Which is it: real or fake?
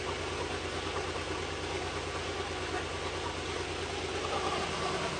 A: real